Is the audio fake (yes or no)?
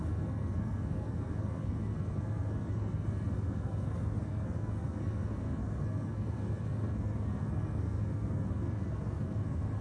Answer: yes